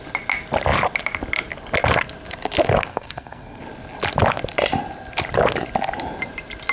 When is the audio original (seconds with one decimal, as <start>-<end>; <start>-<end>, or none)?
0.0-2.9; 3.6-6.7